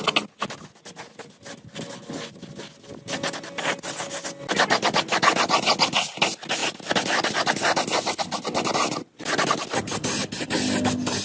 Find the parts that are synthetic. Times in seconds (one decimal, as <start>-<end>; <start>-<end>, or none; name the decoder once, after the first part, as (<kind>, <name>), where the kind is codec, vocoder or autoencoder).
none

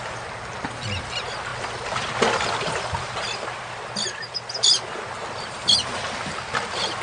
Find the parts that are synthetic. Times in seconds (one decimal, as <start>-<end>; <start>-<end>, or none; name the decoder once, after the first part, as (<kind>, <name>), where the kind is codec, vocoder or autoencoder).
none

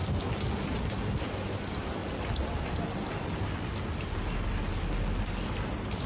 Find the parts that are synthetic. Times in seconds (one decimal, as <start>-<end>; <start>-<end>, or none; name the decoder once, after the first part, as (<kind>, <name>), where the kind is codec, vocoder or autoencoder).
none

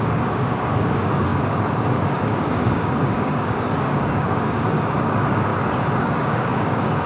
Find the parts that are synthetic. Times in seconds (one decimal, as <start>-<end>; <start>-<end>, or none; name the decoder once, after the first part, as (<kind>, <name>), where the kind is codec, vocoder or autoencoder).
0.0-5.5 (codec, DAC); 6.0-7.1

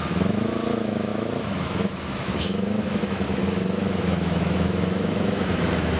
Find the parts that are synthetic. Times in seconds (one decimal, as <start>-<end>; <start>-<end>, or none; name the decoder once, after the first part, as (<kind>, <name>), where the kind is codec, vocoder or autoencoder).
0.0-6.0 (autoencoder, DAC-VAE)

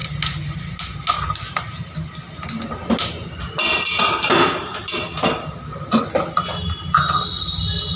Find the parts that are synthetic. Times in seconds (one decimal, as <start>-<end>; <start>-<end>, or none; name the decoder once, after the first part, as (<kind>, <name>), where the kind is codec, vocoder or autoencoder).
none

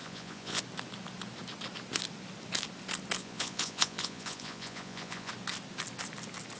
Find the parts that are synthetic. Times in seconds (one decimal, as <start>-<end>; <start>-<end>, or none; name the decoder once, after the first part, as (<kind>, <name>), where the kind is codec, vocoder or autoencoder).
0.0-0.6 (vocoder, Vocos); 3.2-5.3

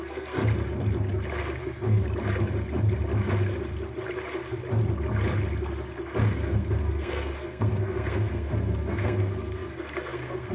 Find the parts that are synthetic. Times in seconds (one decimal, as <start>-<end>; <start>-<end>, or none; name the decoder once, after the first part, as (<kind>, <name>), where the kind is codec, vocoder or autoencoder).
0.0-0.4 (codec, SNAC); 1.6-2.0; 6.2-10.5